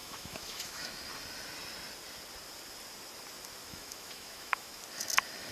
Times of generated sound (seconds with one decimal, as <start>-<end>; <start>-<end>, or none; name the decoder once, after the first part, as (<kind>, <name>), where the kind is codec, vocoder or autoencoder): 0.0-0.9 (autoencoder, DAC-VAE); 3.6-4.8